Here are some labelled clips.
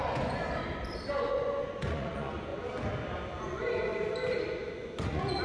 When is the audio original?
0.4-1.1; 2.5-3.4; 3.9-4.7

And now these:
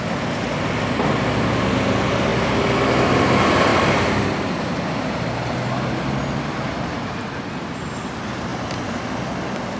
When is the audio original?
0.0-9.8

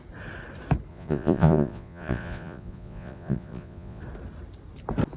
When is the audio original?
0.0-0.9; 4.0-5.2

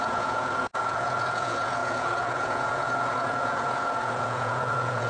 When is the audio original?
none

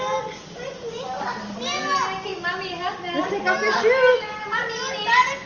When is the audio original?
0.0-5.5